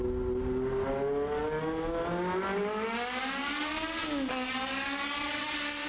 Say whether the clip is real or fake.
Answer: real